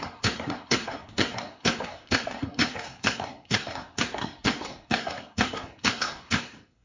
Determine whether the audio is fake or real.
fake